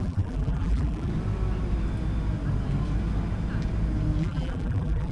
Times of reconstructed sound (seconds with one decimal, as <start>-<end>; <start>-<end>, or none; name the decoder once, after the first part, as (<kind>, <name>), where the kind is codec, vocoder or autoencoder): 0.0-1.1 (vocoder, BigVGAN v2); 4.2-5.1